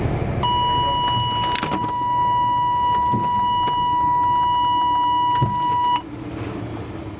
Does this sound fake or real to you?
real